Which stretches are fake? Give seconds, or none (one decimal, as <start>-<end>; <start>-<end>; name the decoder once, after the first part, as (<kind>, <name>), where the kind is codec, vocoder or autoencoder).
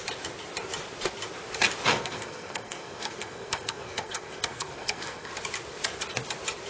1.9-5.3 (codec, SNAC)